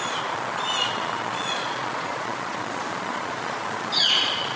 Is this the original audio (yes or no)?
no